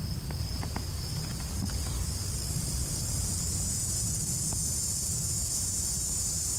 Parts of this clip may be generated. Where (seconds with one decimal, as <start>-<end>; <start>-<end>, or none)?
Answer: 1.1-4.3